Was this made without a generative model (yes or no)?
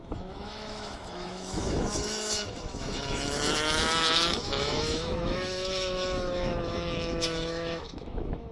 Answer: no